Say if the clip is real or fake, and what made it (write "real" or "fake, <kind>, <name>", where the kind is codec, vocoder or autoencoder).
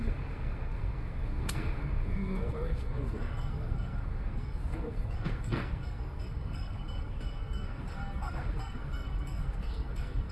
fake, codec, SNAC